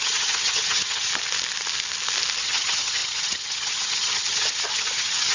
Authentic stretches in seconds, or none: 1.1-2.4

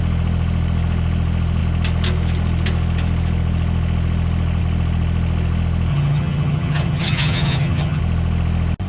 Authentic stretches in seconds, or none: 0.0-5.9; 8.0-8.9